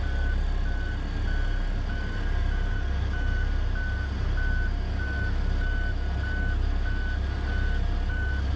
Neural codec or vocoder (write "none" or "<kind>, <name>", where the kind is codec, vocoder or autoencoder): none